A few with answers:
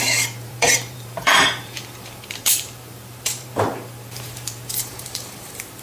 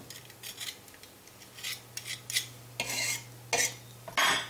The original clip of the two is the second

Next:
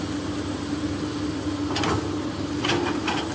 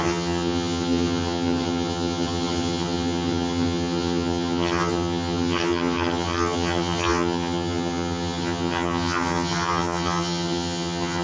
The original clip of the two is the first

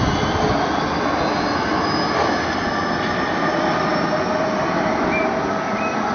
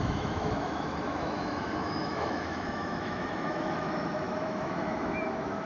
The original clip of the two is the first